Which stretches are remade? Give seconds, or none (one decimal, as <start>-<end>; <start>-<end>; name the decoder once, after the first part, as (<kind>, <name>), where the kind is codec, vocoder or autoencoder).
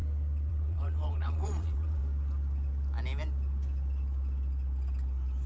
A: 0.5-2.0 (vocoder, WaveNeXt)